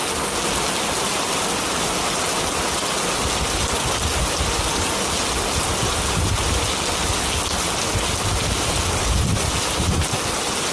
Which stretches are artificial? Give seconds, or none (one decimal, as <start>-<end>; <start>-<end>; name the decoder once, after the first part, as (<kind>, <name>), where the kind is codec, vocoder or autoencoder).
none